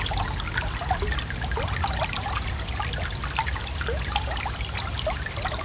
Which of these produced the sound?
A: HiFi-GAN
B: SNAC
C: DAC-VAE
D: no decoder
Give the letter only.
D